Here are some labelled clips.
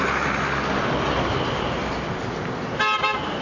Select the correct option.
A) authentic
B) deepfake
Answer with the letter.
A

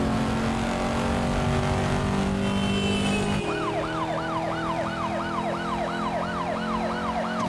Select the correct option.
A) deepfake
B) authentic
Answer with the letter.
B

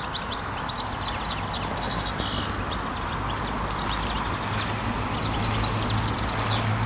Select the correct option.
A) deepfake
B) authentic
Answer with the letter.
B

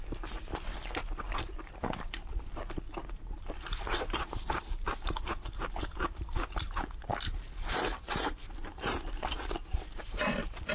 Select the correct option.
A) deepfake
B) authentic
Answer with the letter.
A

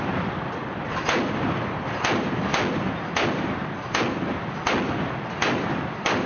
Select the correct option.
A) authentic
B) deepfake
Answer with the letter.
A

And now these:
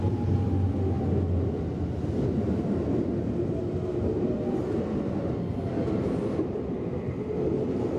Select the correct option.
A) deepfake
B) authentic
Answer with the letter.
B